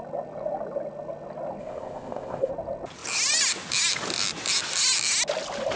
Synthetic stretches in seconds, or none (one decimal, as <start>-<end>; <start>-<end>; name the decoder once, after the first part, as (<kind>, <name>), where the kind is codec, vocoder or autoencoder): 1.6-2.5 (codec, ZipCodec)